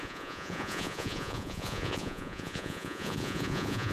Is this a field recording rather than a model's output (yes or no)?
no